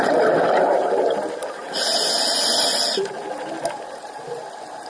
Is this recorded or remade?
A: recorded